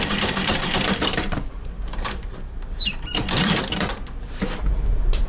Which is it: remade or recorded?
remade